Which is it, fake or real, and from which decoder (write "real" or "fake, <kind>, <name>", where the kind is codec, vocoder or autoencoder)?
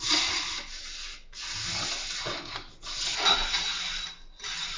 real